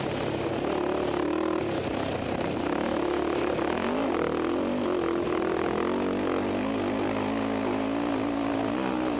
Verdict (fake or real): real